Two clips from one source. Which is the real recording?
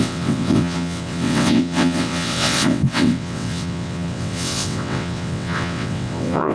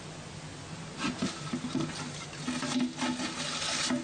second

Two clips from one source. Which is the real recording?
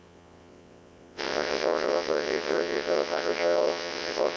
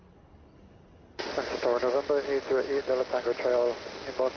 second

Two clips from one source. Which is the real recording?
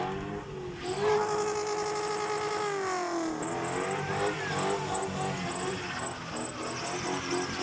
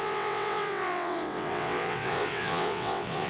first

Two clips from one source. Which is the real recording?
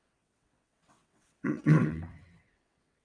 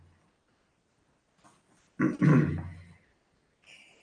second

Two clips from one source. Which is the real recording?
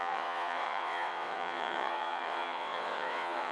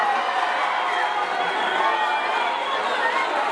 second